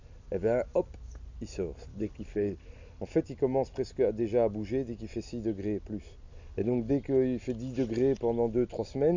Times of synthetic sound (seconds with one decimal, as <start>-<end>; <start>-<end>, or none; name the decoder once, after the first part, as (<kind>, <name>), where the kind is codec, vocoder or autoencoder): 1.9-3.0 (codec, HILCodec); 6.3-6.9